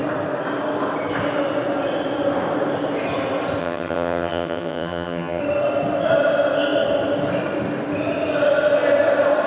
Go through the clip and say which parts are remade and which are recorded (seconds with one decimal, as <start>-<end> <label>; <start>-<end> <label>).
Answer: 0.0-3.6 recorded; 3.6-5.4 remade; 5.4-9.5 recorded